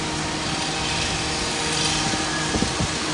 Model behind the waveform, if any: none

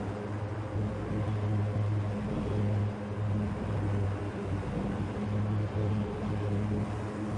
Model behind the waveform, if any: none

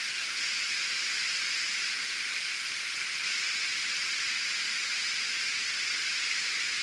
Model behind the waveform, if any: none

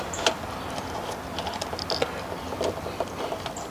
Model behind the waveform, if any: none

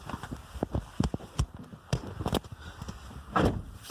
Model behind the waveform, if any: none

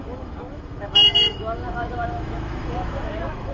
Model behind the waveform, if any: autoencoder, DAC-VAE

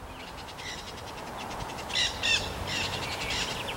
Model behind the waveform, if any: none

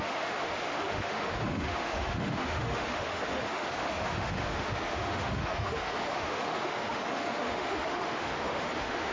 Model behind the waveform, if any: autoencoder, DAC-VAE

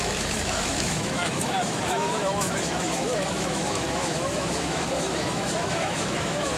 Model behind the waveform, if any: autoencoder, DAC-VAE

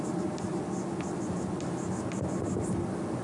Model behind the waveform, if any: none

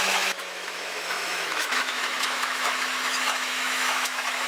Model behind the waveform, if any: autoencoder, DAC-VAE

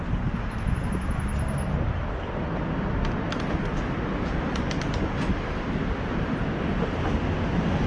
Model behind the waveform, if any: none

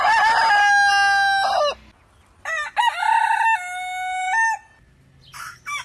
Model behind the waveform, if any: none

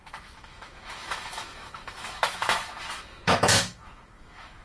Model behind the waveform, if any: autoencoder, DAC-VAE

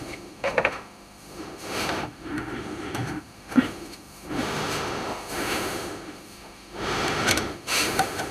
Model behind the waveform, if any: autoencoder, DAC-VAE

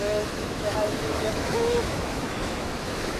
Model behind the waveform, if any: autoencoder, DAC-VAE